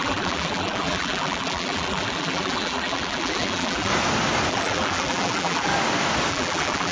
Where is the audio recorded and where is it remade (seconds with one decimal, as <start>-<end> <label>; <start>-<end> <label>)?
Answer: 0.0-3.9 remade; 3.9-4.5 recorded; 4.5-5.7 remade; 5.7-6.3 recorded; 6.3-6.9 remade